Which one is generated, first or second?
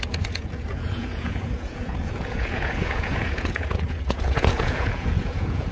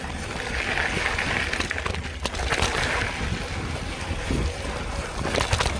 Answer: first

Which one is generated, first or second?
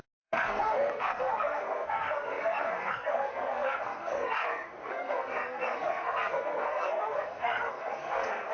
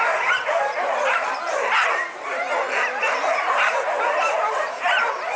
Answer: first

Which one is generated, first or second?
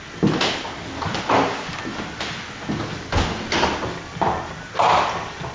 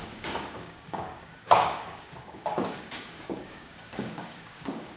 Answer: second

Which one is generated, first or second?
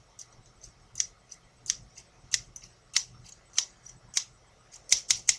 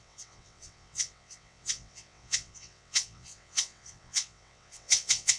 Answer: second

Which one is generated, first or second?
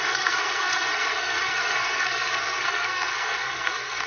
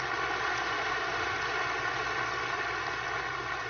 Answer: first